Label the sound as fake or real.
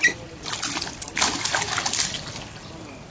real